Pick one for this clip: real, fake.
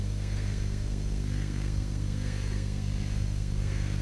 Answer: fake